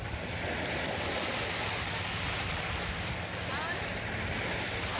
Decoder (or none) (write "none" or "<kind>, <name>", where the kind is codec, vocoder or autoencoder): none